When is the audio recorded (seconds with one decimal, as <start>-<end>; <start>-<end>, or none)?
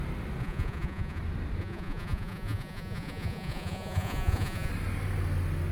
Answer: 0.0-0.4; 1.2-1.6; 4.7-5.7